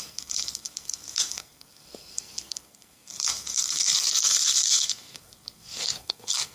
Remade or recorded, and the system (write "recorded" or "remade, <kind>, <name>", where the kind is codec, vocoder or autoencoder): remade, codec, SNAC